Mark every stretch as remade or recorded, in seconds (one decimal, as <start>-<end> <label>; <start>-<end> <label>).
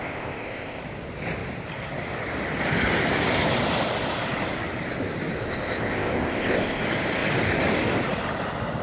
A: 0.0-0.8 remade; 0.8-5.4 recorded; 5.4-6.8 remade; 6.8-8.8 recorded